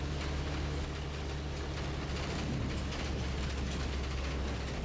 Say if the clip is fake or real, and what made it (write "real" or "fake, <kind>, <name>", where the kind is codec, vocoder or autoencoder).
real